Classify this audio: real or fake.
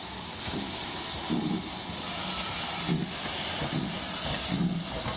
real